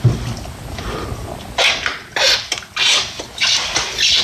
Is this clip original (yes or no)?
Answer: yes